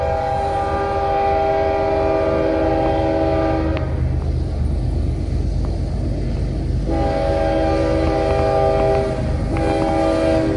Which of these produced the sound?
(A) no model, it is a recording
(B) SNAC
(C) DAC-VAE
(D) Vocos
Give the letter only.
A